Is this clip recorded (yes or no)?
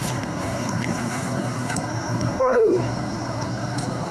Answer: no